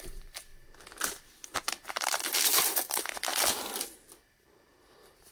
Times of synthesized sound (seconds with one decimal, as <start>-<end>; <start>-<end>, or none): 0.0-0.5; 2.0-3.3; 4.3-5.3